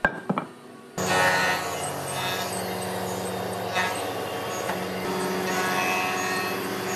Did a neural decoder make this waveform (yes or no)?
no